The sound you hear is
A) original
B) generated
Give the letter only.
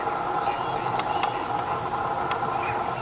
A